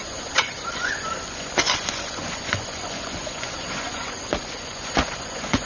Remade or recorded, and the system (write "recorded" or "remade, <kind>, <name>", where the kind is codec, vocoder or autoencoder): remade, vocoder, Vocos